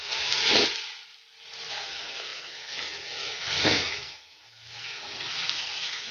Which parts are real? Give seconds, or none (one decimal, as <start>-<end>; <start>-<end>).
0.4-1.7